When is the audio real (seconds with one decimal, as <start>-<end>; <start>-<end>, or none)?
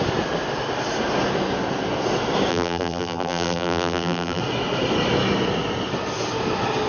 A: 0.0-2.5; 4.4-6.9